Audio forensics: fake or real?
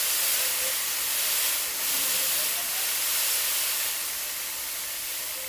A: real